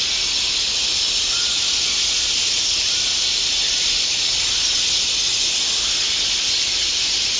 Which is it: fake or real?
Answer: real